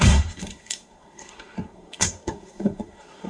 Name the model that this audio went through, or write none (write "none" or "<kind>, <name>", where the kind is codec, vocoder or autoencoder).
codec, SNAC